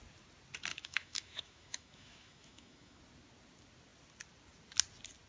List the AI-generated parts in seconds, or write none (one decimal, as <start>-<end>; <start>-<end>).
0.7-3.0